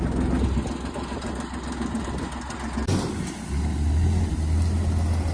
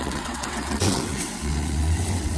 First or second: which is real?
first